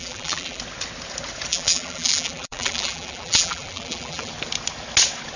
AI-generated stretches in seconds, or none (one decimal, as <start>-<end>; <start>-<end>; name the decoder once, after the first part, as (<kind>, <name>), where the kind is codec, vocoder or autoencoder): 0.0-0.6 (vocoder, BigVGAN v2); 1.5-4.3